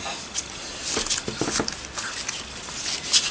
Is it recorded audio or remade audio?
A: recorded